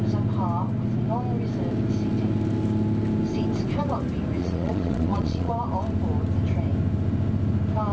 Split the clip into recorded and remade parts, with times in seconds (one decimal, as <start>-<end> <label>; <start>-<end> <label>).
0.0-4.4 recorded; 4.4-5.5 remade; 5.5-7.9 recorded